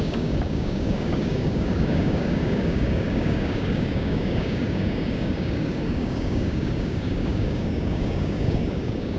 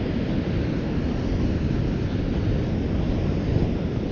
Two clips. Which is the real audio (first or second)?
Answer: second